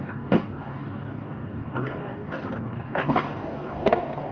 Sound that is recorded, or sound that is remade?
remade